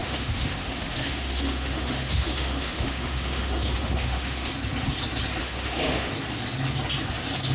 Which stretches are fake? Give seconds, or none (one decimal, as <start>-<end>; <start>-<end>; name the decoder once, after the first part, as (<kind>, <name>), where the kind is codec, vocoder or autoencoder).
0.0-4.5 (autoencoder, DAC-VAE); 5.4-6.1